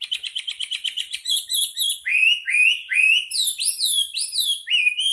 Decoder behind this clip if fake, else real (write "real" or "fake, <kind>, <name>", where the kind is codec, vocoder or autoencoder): fake, vocoder, BigVGAN v2